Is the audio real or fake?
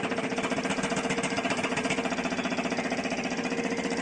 real